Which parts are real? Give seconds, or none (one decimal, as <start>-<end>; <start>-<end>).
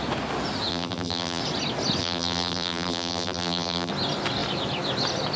0.0-0.7; 1.4-2.0; 3.9-5.4